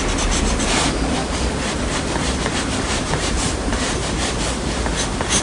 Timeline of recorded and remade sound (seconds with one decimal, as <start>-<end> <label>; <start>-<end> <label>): 0.0-1.2 recorded; 1.2-4.4 remade; 4.4-5.4 recorded